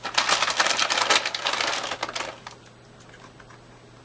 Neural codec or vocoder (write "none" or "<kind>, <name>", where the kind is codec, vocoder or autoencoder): none